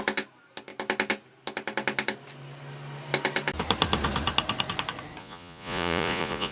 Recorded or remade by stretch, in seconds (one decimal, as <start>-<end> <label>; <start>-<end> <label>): 0.0-5.2 recorded; 5.2-6.5 remade